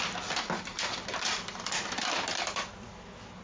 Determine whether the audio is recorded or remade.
recorded